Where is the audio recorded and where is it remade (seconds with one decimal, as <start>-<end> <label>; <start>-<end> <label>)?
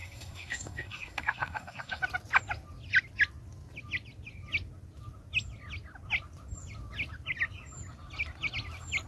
0.0-2.0 remade; 2.0-9.1 recorded